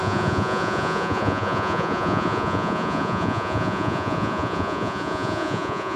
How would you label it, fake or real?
fake